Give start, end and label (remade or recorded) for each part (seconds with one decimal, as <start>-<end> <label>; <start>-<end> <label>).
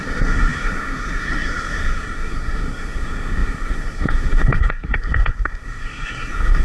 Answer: 0.0-6.6 remade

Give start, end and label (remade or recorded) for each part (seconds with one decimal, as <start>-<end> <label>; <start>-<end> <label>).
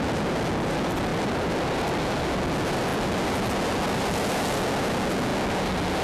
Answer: 0.0-6.0 recorded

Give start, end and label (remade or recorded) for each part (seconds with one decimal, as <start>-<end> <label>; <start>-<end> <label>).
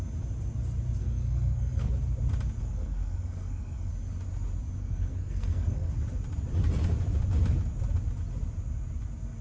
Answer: 0.0-1.0 recorded; 1.0-1.9 remade; 1.9-2.6 recorded; 2.6-3.9 remade; 3.9-4.8 recorded; 4.8-5.9 remade; 5.9-9.4 recorded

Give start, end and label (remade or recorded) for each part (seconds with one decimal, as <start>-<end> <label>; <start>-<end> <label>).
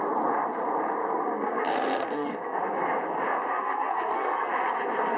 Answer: 0.0-1.0 recorded; 1.0-2.6 remade; 2.6-3.5 recorded; 3.5-4.5 remade; 4.5-5.2 recorded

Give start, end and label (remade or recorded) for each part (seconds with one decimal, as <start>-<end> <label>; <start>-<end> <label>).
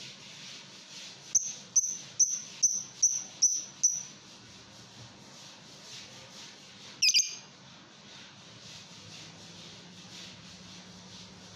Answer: 0.0-11.6 recorded